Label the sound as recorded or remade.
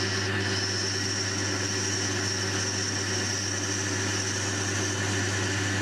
recorded